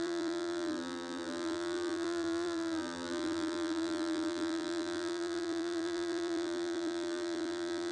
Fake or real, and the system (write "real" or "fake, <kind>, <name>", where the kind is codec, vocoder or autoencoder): fake, vocoder, BigVGAN v2